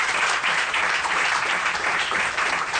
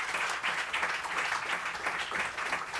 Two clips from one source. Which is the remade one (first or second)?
first